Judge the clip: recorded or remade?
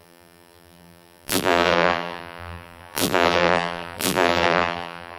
remade